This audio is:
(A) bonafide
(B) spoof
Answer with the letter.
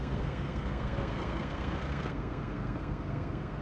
B